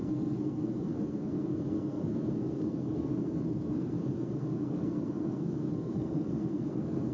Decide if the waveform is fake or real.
fake